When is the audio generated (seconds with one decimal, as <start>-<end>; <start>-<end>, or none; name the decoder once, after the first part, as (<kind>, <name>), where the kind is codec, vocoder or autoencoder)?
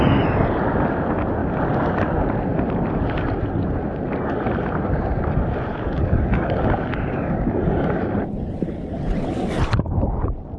5.7-8.0 (codec, DAC)